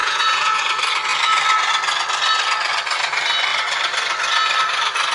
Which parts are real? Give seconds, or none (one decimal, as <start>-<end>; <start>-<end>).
0.6-5.1